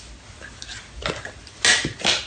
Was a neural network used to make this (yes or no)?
no